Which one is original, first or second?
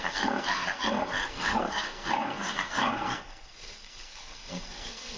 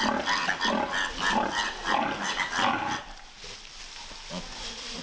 second